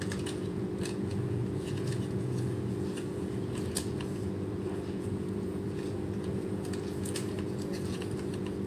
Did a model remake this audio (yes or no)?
yes